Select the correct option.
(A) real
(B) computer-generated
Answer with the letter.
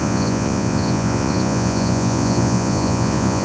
B